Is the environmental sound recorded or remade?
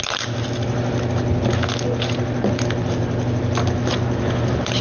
recorded